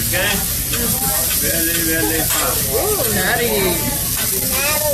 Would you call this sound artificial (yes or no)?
no